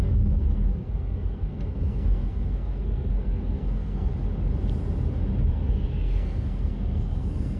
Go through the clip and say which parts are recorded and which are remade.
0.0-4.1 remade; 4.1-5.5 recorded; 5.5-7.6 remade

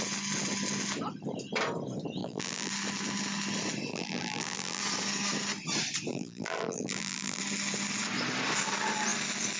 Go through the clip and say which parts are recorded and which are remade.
0.0-2.2 recorded; 2.2-2.7 remade; 2.7-3.9 recorded; 3.9-4.8 remade; 4.8-6.1 recorded; 6.1-7.4 remade; 7.4-9.6 recorded

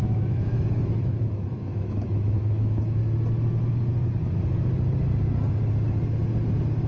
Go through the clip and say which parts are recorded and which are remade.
0.0-3.0 remade; 3.0-6.9 recorded

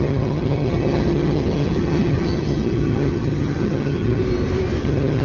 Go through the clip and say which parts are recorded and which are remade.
0.0-4.2 remade; 4.2-4.8 recorded; 4.8-5.2 remade

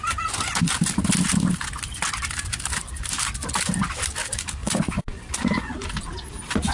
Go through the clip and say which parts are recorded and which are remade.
0.0-4.6 recorded; 4.6-5.2 remade; 5.2-6.7 recorded

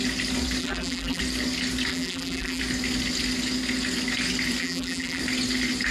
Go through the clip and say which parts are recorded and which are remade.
0.0-0.6 recorded; 0.6-1.2 remade; 1.2-1.9 recorded; 1.9-2.6 remade; 2.6-4.6 recorded; 4.6-5.2 remade; 5.2-5.9 recorded

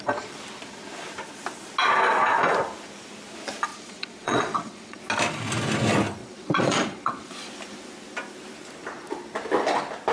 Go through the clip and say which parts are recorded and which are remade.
0.0-3.7 recorded; 3.7-5.0 remade; 5.0-6.2 recorded; 6.2-7.5 remade; 7.5-10.1 recorded

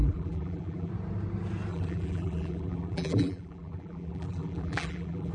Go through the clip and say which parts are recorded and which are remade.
0.0-0.9 remade; 0.9-1.7 recorded; 1.7-5.3 remade